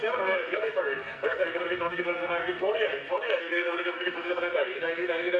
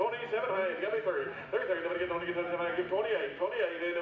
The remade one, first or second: first